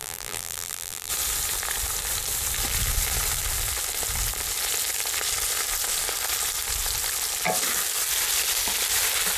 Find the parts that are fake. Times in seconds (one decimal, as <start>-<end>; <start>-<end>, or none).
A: 0.0-1.1